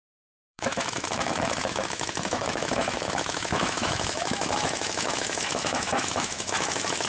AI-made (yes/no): yes